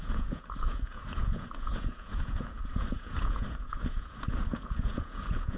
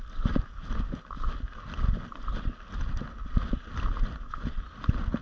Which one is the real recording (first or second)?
second